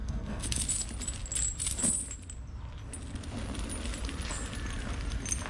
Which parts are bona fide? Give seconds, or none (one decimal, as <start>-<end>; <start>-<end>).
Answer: 0.6-5.5